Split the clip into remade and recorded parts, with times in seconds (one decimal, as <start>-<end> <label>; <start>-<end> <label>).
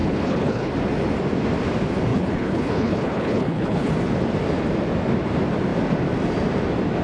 0.0-0.7 remade; 0.7-2.1 recorded; 2.1-3.9 remade; 3.9-7.0 recorded